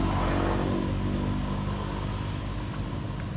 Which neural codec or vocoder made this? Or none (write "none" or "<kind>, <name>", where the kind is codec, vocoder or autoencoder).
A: none